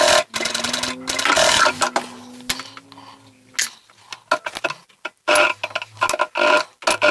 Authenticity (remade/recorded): recorded